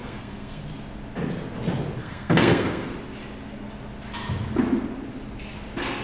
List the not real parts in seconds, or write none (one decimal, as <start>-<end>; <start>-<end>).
0.0-0.6; 2.0-2.9